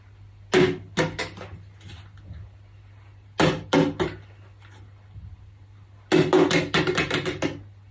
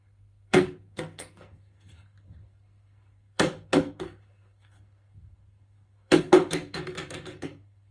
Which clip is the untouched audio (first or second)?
first